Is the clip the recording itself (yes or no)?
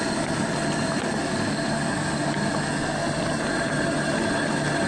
yes